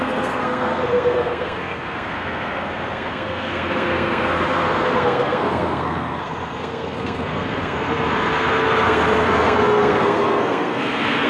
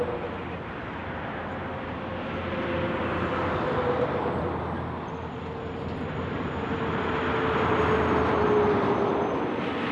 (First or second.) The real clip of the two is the second